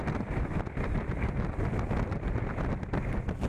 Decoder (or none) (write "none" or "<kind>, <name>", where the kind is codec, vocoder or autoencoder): none